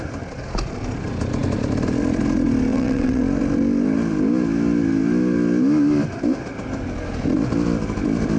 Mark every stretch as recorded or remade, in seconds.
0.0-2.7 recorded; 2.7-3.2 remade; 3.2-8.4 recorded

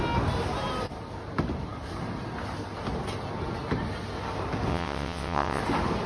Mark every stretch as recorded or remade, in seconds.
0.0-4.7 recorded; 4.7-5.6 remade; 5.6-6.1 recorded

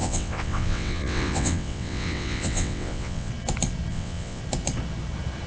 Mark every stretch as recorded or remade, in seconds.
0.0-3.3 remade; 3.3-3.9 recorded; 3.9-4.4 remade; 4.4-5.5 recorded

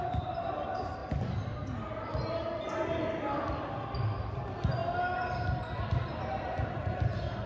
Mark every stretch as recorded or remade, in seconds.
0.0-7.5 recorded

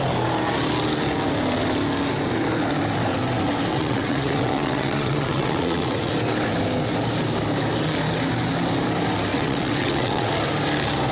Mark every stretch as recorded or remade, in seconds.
0.0-3.7 recorded; 3.7-6.1 remade; 6.1-9.3 recorded; 9.3-10.3 remade; 10.3-11.1 recorded

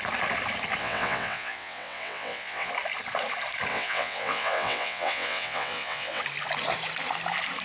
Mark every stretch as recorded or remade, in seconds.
0.0-0.8 recorded; 0.8-2.7 remade; 2.7-3.7 recorded; 3.7-6.2 remade; 6.2-7.6 recorded

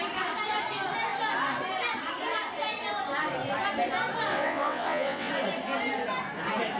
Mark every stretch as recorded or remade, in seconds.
0.0-4.3 recorded; 4.3-5.3 remade; 5.3-6.8 recorded